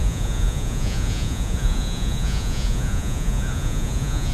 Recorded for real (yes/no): no